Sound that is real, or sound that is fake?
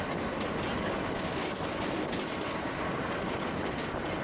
real